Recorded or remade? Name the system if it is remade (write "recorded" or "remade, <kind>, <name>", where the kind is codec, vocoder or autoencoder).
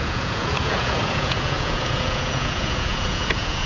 remade, vocoder, Vocos